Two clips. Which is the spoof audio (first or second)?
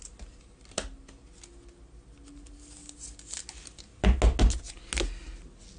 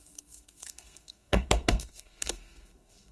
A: second